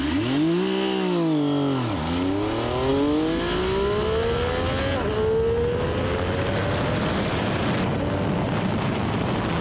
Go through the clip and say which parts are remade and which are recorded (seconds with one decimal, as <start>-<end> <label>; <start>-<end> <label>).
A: 0.0-9.6 recorded

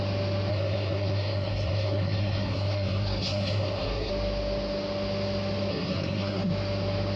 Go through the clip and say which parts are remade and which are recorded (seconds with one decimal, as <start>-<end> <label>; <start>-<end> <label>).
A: 0.0-0.5 recorded; 0.5-4.1 remade; 4.1-5.7 recorded; 5.7-6.4 remade; 6.4-7.2 recorded